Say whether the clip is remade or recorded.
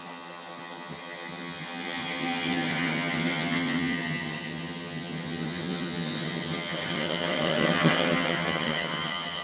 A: remade